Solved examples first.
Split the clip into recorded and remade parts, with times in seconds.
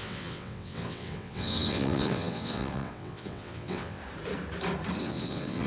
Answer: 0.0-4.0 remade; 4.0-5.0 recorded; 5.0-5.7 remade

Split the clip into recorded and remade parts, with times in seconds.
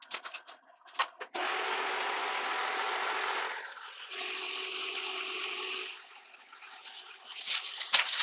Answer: 0.0-2.6 recorded; 2.6-3.5 remade; 3.5-8.2 recorded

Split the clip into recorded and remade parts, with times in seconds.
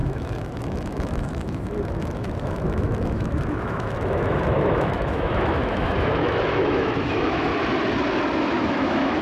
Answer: 0.0-7.5 remade; 7.5-8.4 recorded; 8.4-9.2 remade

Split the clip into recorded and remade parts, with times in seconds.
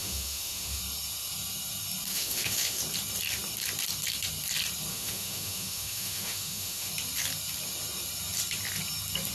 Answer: 0.0-0.8 remade; 0.8-2.1 recorded; 2.1-2.8 remade; 2.8-4.9 recorded; 4.9-6.9 remade; 6.9-9.3 recorded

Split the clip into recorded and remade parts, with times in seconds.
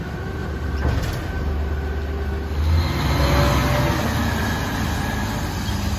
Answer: 0.0-0.4 recorded; 0.4-1.1 remade; 1.1-6.0 recorded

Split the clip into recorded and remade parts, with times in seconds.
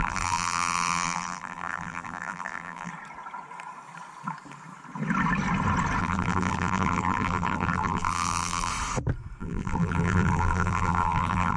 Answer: 0.0-2.9 remade; 2.9-6.0 recorded; 6.0-8.7 remade; 8.7-9.4 recorded; 9.4-11.6 remade